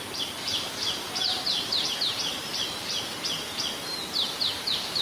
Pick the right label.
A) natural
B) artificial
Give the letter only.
B